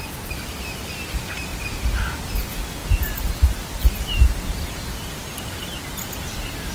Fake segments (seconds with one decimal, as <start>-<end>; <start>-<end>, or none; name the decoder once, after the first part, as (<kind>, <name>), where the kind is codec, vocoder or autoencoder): none